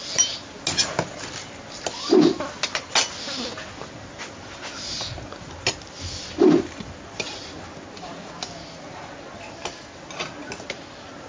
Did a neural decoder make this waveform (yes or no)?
no